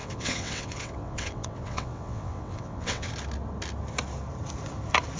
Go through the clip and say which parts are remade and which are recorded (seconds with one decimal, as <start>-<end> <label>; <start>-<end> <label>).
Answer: 0.0-3.1 remade; 3.1-5.2 recorded